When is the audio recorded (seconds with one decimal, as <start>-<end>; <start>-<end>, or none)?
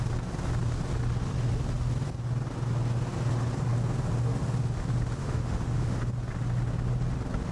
0.0-5.2; 6.0-7.5